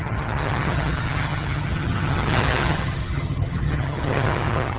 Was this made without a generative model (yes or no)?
no